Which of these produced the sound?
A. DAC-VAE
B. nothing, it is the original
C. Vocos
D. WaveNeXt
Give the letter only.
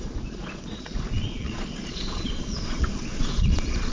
C